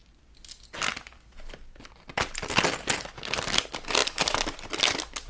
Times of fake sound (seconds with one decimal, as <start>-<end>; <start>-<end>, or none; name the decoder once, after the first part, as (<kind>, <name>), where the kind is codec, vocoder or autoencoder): none

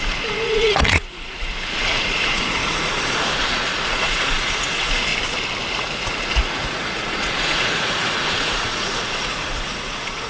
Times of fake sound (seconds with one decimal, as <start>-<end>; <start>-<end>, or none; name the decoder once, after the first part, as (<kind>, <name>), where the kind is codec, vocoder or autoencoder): 0.0-5.1 (vocoder, Vocos); 5.7-10.3